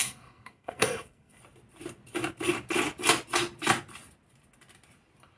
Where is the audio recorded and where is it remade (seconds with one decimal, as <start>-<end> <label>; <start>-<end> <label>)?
0.0-1.4 remade; 1.4-5.4 recorded